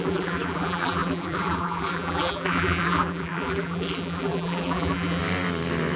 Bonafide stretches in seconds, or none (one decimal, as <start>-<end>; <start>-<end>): 5.2-6.0